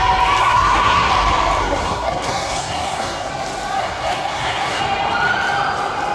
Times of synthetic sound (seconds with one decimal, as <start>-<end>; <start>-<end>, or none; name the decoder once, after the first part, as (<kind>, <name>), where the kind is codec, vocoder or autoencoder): 0.4-1.1 (codec, SNAC); 1.6-3.3; 3.8-4.8